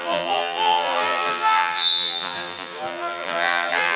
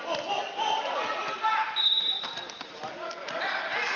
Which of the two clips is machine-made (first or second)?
first